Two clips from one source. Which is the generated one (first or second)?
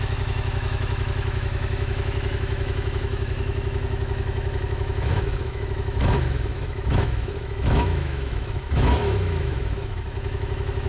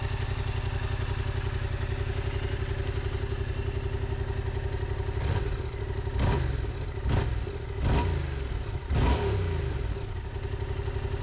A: first